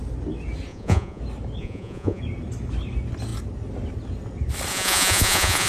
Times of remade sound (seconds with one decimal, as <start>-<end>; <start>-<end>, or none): 0.7-1.2; 1.6-2.2; 4.7-5.7